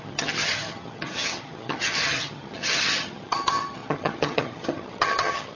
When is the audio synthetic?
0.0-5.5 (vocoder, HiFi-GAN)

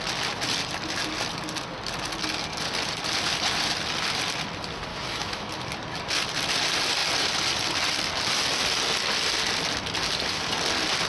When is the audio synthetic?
4.9-5.5 (autoencoder, DAC-VAE)

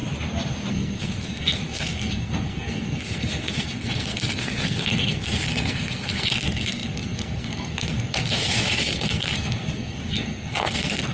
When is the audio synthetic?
0.7-11.1 (codec, SNAC)

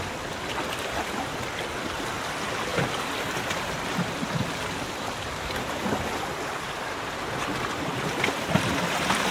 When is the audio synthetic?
none